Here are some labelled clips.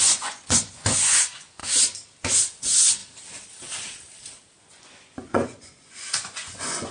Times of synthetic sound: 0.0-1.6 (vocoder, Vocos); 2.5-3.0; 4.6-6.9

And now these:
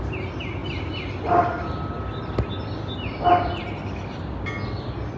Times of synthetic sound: none

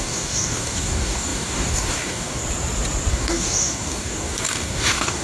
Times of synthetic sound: 0.0-2.4 (codec, DAC); 3.1-5.2

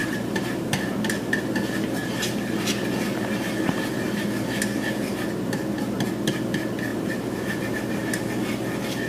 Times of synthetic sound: 0.0-0.7 (vocoder, BigVGAN v2); 6.9-8.3

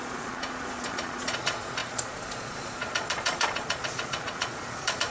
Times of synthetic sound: 0.0-5.1 (vocoder, Vocos)